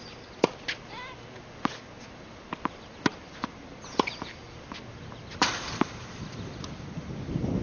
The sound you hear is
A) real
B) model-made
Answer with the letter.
A